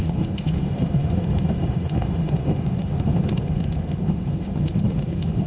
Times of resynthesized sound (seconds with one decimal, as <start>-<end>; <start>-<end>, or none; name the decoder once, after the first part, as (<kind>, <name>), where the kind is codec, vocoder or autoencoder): 0.0-5.5 (autoencoder, DAC-VAE)